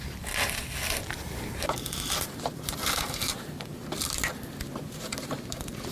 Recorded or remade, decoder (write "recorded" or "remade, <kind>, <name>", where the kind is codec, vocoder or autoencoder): recorded